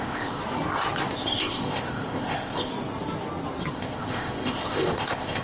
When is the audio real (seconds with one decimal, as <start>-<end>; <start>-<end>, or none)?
0.4-1.1; 2.7-3.7